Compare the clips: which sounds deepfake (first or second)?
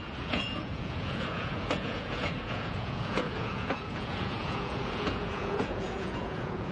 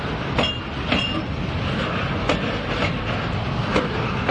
first